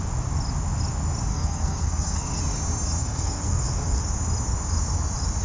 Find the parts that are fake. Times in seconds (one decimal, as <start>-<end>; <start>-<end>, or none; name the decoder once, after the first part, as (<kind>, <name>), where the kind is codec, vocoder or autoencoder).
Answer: 1.3-2.4 (codec, SNAC); 3.0-4.0